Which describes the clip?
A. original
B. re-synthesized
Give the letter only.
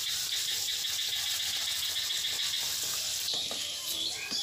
A